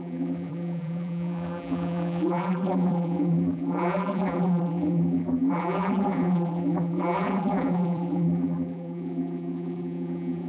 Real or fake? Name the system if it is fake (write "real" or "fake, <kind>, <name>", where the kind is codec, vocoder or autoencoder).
fake, vocoder, BigVGAN v2